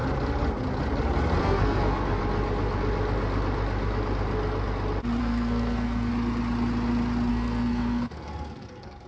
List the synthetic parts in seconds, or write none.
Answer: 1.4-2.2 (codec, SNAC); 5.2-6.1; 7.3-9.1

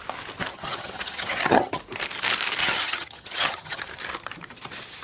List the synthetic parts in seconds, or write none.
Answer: 0.5-1.8 (vocoder, HiFi-GAN); 2.6-3.8